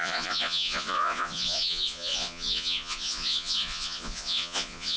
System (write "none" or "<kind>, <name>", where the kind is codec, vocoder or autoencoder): vocoder, Vocos